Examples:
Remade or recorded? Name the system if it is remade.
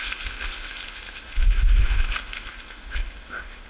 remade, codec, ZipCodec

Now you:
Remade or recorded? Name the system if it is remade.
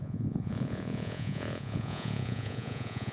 remade, vocoder, Vocos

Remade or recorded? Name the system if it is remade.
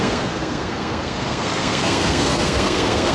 remade, codec, SNAC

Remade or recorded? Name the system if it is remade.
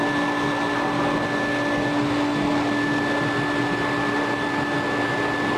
recorded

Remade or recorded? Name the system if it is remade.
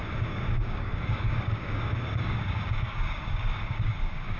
remade, codec, DAC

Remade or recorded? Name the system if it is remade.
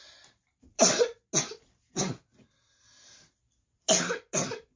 recorded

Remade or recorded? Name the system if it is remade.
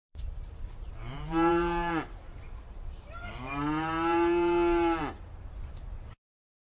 remade, vocoder, BigVGAN v2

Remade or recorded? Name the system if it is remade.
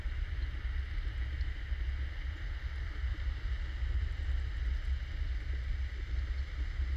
recorded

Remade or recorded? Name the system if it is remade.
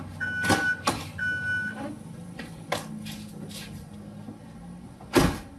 recorded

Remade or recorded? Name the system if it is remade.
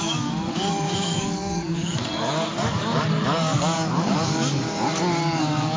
remade, codec, DAC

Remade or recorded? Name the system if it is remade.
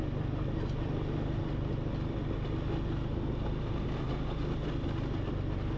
recorded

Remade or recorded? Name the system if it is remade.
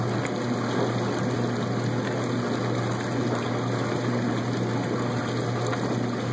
recorded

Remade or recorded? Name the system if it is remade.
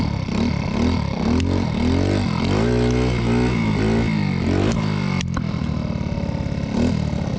recorded